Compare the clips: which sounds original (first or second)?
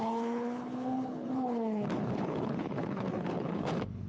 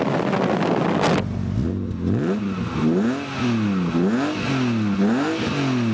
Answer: second